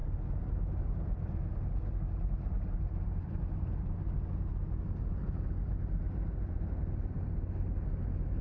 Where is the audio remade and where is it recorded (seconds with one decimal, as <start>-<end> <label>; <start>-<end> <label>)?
0.0-8.4 recorded